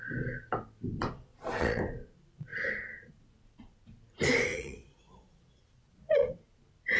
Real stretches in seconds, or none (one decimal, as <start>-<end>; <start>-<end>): 0.0-1.3; 1.8-4.5; 6.3-7.0